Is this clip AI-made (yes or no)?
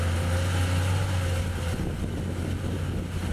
no